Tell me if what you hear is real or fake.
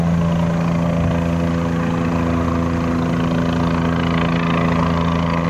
real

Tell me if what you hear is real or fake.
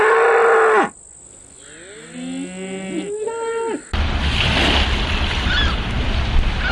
real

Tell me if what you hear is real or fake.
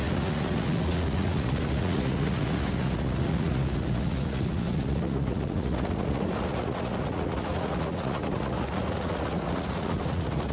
fake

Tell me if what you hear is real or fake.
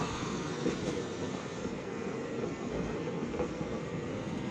fake